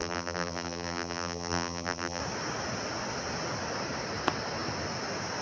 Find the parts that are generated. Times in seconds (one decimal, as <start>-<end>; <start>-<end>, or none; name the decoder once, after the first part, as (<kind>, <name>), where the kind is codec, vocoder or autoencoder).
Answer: 0.0-2.2 (vocoder, BigVGAN v2)